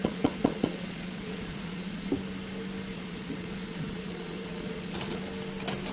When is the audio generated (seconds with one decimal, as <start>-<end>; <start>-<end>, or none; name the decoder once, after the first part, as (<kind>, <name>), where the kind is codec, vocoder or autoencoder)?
0.0-2.1 (vocoder, Vocos); 2.9-5.2